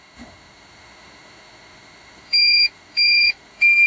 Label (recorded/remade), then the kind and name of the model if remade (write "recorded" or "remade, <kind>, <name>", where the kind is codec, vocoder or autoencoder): remade, autoencoder, DAC-VAE